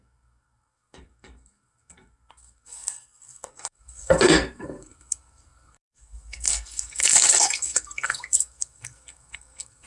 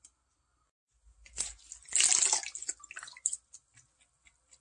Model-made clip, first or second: first